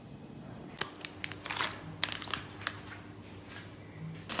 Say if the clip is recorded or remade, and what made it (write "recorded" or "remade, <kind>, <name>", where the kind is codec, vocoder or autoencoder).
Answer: recorded